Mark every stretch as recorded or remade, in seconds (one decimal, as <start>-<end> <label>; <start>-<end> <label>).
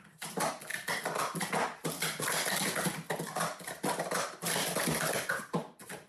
0.0-6.1 recorded